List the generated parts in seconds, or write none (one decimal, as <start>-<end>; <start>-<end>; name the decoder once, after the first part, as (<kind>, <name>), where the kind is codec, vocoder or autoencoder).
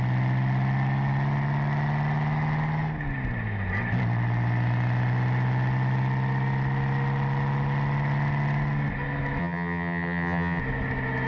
9.4-10.6 (vocoder, HiFi-GAN)